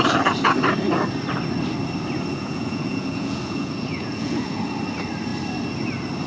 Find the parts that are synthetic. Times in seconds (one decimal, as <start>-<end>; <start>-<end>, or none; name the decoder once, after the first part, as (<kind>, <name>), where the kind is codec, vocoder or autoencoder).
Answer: 2.3-4.6 (vocoder, Vocos)